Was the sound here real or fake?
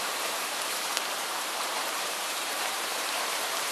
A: fake